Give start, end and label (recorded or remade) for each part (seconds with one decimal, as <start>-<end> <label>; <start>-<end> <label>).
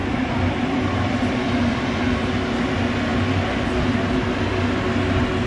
0.0-2.0 remade; 2.0-5.5 recorded